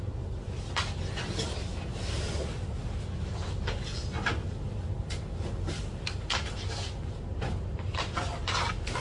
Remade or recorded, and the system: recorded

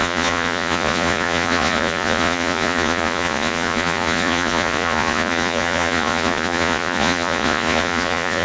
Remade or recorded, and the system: remade, vocoder, Vocos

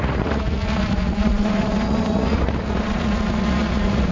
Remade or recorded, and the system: remade, vocoder, Vocos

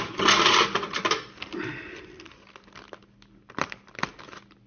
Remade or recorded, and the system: recorded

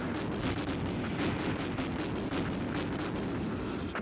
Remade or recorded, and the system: recorded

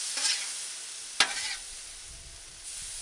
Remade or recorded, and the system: recorded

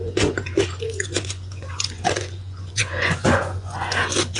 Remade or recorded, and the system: remade, vocoder, Vocos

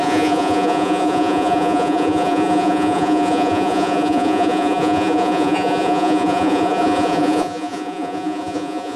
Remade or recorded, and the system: remade, vocoder, Vocos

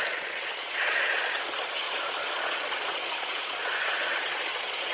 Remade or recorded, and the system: remade, vocoder, Vocos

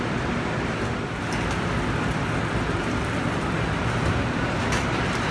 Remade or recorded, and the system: recorded